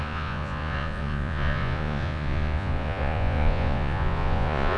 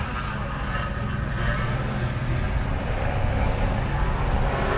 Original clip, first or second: second